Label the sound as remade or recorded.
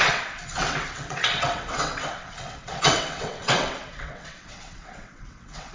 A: remade